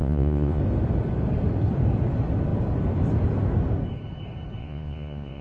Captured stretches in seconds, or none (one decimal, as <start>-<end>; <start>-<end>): 0.6-4.6